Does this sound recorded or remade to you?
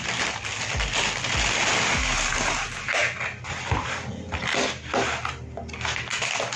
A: recorded